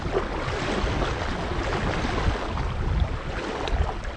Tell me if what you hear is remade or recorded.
recorded